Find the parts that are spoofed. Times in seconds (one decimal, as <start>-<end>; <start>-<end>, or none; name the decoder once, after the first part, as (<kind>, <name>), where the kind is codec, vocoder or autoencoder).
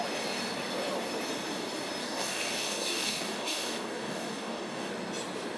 2.0-4.9 (codec, DAC)